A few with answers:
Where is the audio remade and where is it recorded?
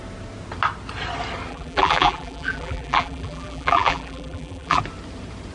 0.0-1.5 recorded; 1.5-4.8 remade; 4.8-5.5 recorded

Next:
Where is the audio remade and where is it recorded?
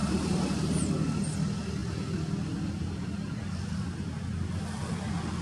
0.0-0.7 remade; 0.7-5.4 recorded